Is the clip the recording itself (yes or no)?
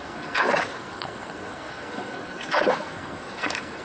no